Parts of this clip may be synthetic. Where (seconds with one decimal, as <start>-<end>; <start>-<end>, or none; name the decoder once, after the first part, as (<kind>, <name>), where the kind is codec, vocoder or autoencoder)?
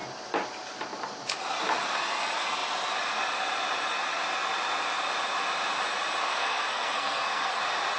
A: 6.2-7.6 (codec, SNAC)